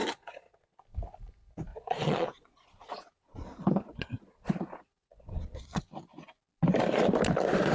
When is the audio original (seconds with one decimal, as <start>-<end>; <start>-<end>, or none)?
0.8-1.7; 5.8-7.7